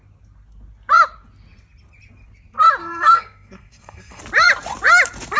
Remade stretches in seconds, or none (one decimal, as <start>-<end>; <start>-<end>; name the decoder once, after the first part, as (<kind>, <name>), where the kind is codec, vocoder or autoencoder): 2.8-4.2 (codec, SNAC)

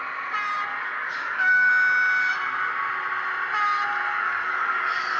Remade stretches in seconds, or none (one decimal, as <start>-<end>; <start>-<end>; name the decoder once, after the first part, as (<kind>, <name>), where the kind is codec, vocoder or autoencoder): 0.7-1.7 (codec, DAC); 4.1-5.2

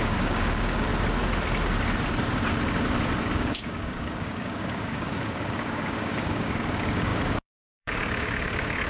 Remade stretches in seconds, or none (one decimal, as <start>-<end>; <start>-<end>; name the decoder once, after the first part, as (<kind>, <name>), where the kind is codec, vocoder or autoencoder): 0.0-0.9 (codec, DAC); 3.2-8.9

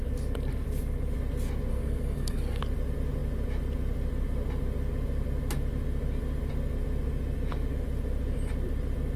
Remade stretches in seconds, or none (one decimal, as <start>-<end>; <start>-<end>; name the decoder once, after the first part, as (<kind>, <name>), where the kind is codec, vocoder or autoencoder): 1.7-2.6 (codec, SNAC)